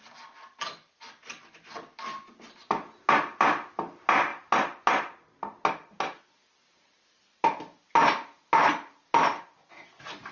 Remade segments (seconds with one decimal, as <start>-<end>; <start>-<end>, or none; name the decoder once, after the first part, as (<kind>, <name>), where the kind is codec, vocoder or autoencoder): none